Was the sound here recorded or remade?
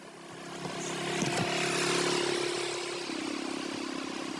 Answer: recorded